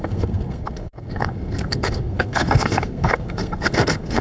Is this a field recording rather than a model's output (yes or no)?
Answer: no